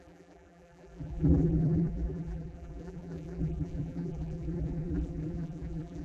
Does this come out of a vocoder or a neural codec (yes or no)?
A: yes